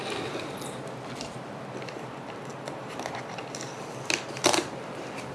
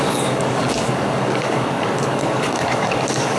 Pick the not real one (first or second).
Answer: second